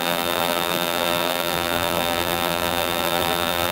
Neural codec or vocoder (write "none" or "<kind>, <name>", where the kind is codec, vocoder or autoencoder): vocoder, BigVGAN v2